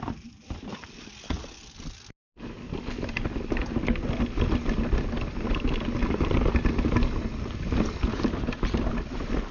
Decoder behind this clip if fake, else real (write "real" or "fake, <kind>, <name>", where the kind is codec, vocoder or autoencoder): real